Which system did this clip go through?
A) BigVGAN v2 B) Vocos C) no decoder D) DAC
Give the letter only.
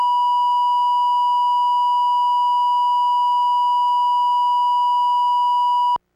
C